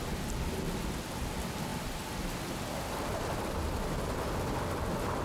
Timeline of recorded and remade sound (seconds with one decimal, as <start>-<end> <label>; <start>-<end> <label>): 0.0-5.2 recorded

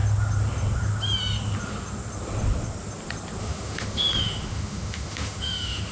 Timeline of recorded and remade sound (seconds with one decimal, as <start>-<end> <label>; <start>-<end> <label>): 0.0-3.4 recorded; 3.4-5.9 remade